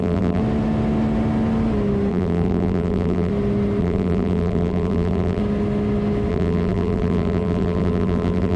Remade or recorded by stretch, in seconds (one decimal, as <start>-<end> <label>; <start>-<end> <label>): 0.0-0.4 remade; 0.4-2.1 recorded; 2.1-3.3 remade; 3.3-3.8 recorded; 3.8-5.4 remade; 5.4-6.3 recorded; 6.3-8.6 remade